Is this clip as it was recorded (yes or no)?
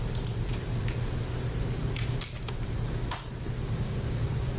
no